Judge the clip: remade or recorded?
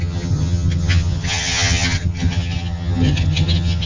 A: remade